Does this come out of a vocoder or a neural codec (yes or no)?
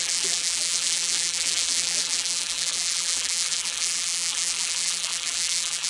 yes